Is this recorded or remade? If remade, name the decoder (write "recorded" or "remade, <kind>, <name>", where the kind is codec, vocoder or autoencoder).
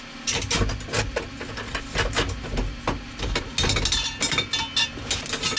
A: recorded